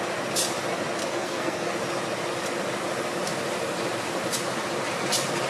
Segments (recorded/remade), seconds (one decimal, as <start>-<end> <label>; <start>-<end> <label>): 0.0-1.0 recorded; 1.0-1.7 remade; 1.7-5.5 recorded